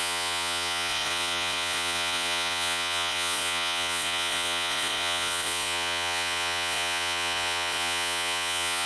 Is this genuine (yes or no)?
no